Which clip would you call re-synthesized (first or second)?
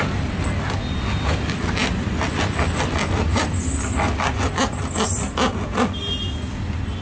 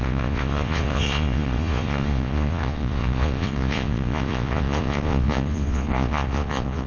second